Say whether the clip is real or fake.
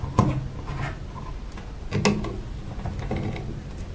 real